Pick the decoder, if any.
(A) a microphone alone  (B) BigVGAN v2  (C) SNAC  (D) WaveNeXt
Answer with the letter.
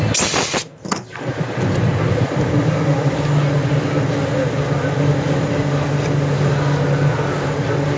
A